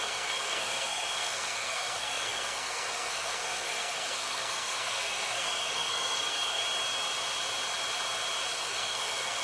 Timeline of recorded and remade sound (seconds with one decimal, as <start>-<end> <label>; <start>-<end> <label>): 0.0-6.6 remade; 6.6-8.5 recorded; 8.5-9.4 remade